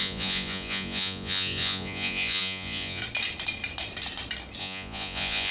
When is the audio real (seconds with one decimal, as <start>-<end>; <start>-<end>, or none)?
3.0-4.6